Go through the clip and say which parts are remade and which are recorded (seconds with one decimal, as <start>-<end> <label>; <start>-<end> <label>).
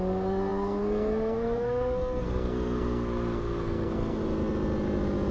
0.0-4.2 remade; 4.2-5.3 recorded